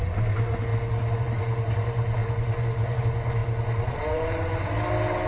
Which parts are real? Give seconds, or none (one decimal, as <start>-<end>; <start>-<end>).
0.7-1.2